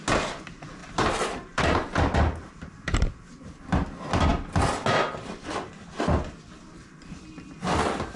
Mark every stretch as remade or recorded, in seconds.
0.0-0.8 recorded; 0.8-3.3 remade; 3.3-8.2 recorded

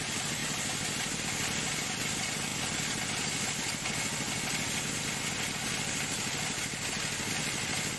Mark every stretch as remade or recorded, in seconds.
0.0-8.0 recorded

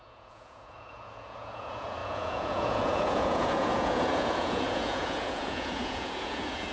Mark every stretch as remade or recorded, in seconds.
0.0-6.7 remade

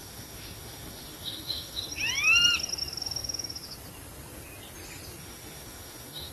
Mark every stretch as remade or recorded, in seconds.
0.0-1.8 remade; 1.8-5.2 recorded; 5.2-6.3 remade

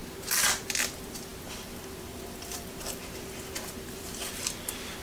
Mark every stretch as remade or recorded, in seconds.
0.0-0.9 recorded; 0.9-5.0 remade